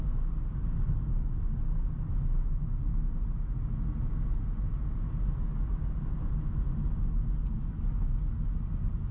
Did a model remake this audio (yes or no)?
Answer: no